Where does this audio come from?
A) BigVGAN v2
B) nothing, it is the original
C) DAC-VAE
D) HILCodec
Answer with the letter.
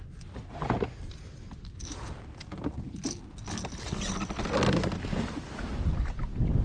B